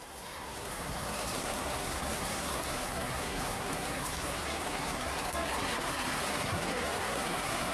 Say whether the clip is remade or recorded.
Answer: remade